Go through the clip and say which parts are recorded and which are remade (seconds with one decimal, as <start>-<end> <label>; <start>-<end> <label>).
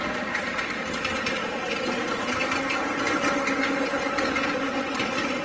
0.0-1.4 remade; 1.4-3.6 recorded; 3.6-5.4 remade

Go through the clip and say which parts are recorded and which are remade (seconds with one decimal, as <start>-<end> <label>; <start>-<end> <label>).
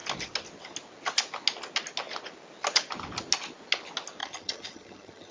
0.0-4.2 recorded; 4.2-5.3 remade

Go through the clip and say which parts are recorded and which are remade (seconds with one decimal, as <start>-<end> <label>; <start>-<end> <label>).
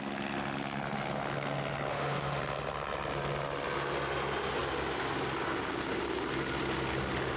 0.0-1.9 recorded; 1.9-2.4 remade; 2.4-7.4 recorded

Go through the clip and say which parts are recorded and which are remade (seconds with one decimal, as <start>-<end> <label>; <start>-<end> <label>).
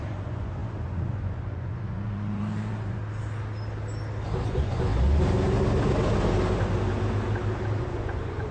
0.0-3.0 remade; 3.0-4.5 recorded; 4.5-4.9 remade; 4.9-7.8 recorded; 7.8-8.5 remade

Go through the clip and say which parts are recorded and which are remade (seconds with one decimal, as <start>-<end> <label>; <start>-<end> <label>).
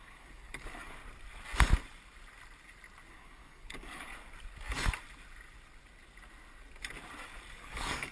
0.0-1.0 remade; 1.0-3.1 recorded; 3.1-4.1 remade; 4.1-7.5 recorded; 7.5-8.1 remade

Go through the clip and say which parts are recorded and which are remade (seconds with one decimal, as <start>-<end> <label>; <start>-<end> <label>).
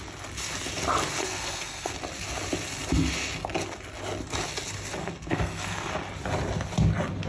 0.0-1.2 recorded; 1.2-1.9 remade; 1.9-5.0 recorded; 5.0-5.9 remade; 5.9-7.3 recorded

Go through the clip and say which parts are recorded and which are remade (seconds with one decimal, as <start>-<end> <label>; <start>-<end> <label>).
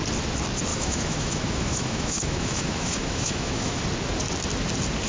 0.0-0.7 recorded; 0.7-3.8 remade; 3.8-5.1 recorded